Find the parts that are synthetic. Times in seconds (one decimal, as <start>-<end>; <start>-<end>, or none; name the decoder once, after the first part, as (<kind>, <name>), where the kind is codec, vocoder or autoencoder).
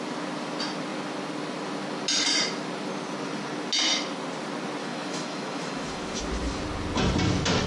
4.8-6.2 (autoencoder, DAC-VAE)